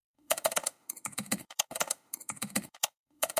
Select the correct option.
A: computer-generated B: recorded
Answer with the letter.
A